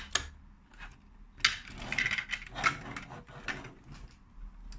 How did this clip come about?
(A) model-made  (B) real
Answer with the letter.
B